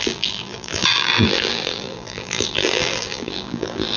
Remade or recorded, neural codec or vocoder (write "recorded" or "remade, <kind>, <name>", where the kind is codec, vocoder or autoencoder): remade, vocoder, BigVGAN v2